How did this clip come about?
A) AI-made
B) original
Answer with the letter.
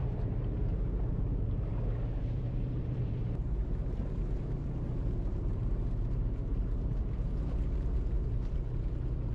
A